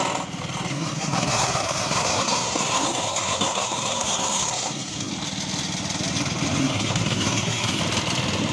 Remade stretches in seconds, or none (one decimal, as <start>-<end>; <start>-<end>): 0.7-5.1; 6.6-7.8